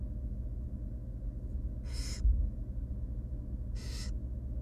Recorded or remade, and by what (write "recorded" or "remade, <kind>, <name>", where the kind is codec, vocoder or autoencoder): recorded